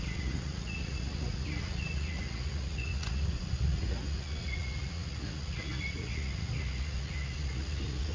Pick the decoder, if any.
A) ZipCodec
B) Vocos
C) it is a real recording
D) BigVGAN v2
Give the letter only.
B